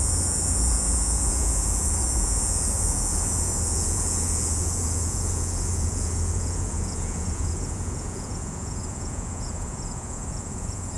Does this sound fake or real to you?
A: fake